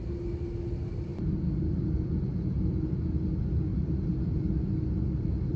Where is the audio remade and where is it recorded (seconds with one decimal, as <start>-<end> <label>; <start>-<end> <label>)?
0.0-5.6 recorded

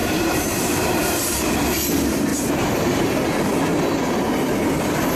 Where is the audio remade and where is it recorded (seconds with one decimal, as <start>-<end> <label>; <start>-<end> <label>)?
0.0-1.4 remade; 1.4-2.3 recorded; 2.3-3.4 remade; 3.4-5.2 recorded

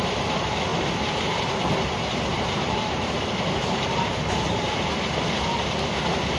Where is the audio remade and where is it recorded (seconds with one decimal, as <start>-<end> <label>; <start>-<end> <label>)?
0.0-0.7 recorded; 0.7-1.4 remade; 1.4-2.1 recorded; 2.1-4.7 remade; 4.7-6.4 recorded

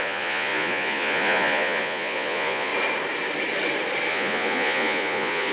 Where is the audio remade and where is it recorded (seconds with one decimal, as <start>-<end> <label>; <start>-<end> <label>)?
0.0-2.7 remade; 2.7-4.1 recorded; 4.1-5.5 remade

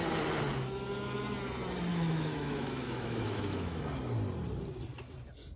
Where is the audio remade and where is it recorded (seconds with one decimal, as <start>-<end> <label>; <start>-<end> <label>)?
0.0-1.9 recorded; 1.9-3.8 remade; 3.8-5.6 recorded

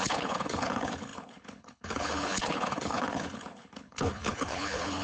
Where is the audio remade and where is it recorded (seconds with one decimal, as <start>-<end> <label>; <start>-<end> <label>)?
0.0-5.0 remade

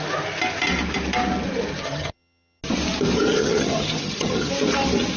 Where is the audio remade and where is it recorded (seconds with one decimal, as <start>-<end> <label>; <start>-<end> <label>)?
0.0-1.8 recorded; 1.8-2.6 remade; 2.6-3.4 recorded; 3.4-4.5 remade; 4.5-5.2 recorded